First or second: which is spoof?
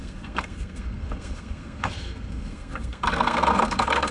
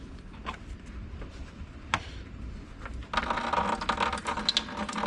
first